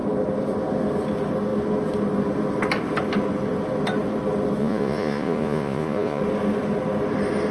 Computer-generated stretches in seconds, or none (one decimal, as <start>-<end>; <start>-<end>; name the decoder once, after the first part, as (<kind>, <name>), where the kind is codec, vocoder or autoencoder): 4.6-6.2 (vocoder, Vocos)